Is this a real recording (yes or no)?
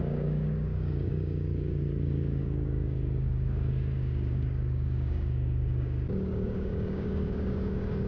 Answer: no